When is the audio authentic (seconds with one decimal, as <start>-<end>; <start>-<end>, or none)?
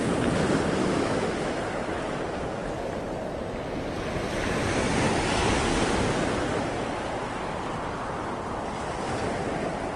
0.0-0.8; 1.6-10.0